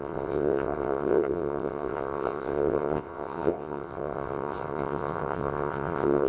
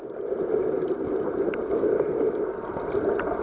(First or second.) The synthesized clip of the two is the first